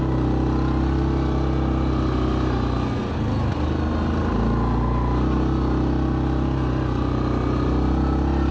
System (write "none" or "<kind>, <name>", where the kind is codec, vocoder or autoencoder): none